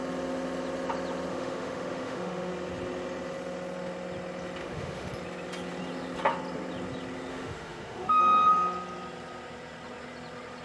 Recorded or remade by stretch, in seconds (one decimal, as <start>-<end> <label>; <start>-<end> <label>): 0.0-1.3 recorded; 1.3-2.5 remade; 2.5-4.6 recorded; 4.6-5.1 remade; 5.1-7.3 recorded; 7.3-8.2 remade; 8.2-10.6 recorded